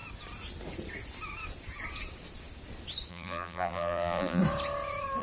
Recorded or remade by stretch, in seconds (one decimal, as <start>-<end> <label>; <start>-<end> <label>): 0.0-3.1 recorded; 3.1-4.4 remade; 4.4-5.2 recorded